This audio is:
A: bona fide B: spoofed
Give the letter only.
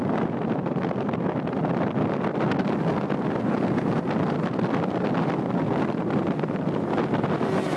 A